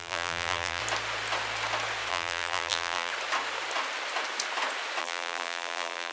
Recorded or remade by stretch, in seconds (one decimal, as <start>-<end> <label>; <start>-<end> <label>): 0.0-0.8 remade; 0.8-2.1 recorded; 2.1-3.1 remade; 3.1-5.0 recorded; 5.0-6.1 remade